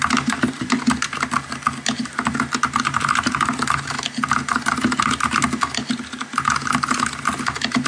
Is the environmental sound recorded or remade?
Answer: recorded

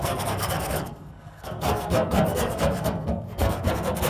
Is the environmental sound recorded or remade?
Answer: remade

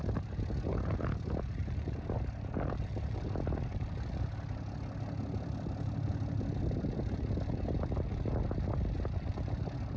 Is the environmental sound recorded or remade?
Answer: recorded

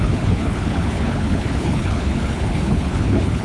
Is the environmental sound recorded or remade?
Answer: remade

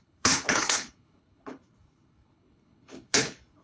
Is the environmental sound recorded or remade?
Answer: remade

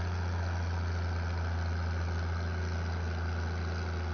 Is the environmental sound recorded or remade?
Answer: recorded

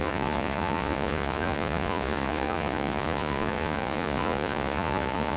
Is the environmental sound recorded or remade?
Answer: remade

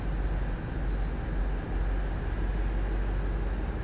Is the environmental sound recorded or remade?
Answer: recorded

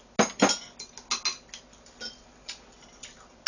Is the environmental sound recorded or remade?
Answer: recorded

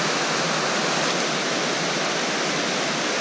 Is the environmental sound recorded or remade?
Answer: recorded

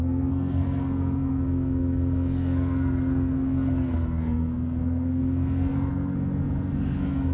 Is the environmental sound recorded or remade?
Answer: remade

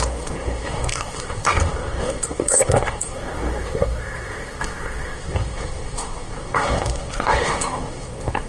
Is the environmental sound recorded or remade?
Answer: remade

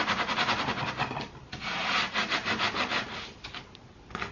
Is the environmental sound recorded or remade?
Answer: recorded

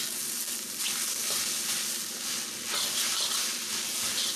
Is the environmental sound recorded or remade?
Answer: recorded